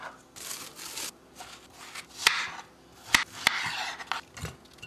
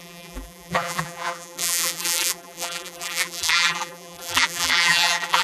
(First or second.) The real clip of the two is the first